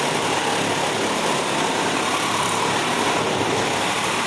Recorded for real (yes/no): no